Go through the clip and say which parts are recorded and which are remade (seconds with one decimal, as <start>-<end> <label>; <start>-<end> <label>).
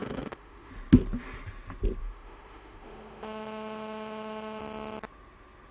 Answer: 0.0-0.7 remade; 0.7-2.0 recorded; 2.0-4.6 remade; 4.6-5.7 recorded